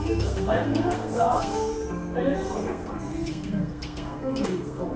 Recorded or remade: remade